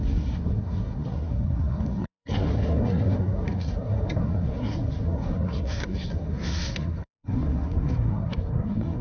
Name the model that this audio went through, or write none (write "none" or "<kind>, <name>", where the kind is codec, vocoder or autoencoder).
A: codec, SNAC